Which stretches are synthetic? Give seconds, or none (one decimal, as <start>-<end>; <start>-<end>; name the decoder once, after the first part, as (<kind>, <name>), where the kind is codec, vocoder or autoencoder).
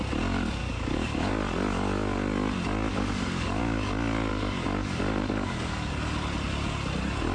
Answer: 0.6-1.3 (codec, DAC); 2.9-3.6; 4.3-5.9